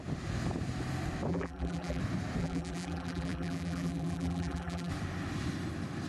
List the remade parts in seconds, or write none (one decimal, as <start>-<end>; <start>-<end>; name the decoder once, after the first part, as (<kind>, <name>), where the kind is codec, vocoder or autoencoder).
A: 1.3-2.0 (vocoder, BigVGAN v2); 2.4-4.9